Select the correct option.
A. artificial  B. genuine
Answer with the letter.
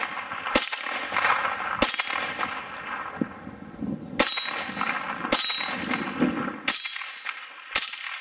B